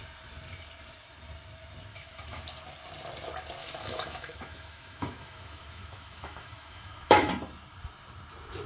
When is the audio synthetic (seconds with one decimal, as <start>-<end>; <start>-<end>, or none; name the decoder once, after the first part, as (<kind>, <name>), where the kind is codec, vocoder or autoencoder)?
1.9-2.4 (autoencoder, DAC-VAE); 3.6-7.3